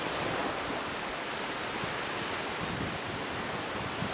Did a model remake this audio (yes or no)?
no